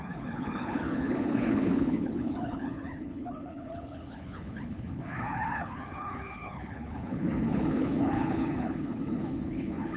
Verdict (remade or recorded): remade